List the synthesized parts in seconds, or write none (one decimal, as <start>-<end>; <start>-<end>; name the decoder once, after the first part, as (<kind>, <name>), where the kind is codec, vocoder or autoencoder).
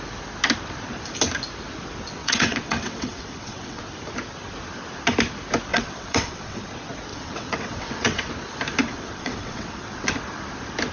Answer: 2.2-3.8 (vocoder, WaveNeXt); 5.7-6.6; 7.1-8.3; 8.8-10.1